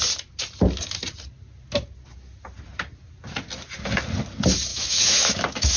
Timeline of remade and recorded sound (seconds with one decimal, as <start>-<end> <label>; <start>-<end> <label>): 0.0-4.7 recorded; 4.7-5.8 remade